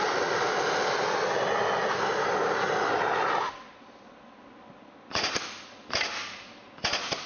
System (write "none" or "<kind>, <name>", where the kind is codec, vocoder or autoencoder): none